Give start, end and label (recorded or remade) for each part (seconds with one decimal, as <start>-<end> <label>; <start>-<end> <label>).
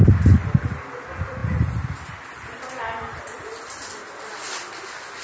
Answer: 0.0-5.2 recorded